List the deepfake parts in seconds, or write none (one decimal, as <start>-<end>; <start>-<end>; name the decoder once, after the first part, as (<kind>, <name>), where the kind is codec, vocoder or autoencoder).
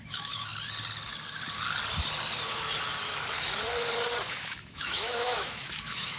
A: 0.0-0.5 (autoencoder, DAC-VAE); 4.2-6.2